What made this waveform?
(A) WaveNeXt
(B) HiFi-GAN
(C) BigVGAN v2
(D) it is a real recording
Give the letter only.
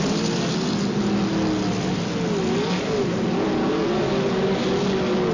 D